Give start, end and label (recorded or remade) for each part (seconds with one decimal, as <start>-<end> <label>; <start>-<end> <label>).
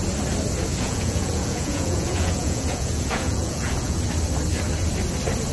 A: 0.0-0.7 recorded; 0.7-4.0 remade; 4.0-5.5 recorded